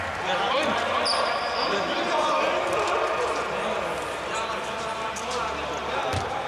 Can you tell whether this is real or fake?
real